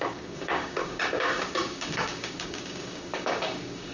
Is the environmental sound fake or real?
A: fake